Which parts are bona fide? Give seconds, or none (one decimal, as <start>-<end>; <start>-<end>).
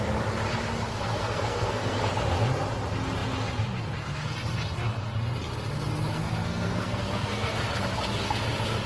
0.0-0.9; 2.0-6.1; 7.8-8.9